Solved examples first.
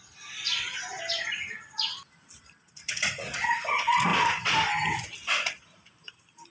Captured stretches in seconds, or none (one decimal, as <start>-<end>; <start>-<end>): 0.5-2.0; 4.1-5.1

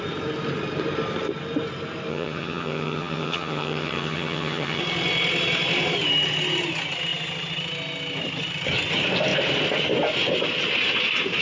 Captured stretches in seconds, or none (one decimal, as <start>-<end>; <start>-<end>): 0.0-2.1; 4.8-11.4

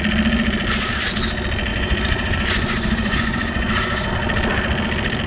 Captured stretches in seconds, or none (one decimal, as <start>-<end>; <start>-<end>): 0.0-1.7; 4.1-5.3